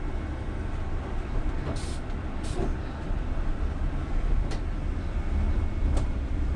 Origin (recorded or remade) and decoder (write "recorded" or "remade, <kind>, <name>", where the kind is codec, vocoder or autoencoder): recorded